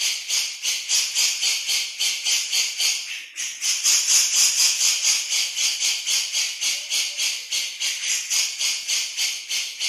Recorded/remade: recorded